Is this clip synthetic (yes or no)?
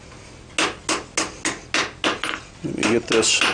no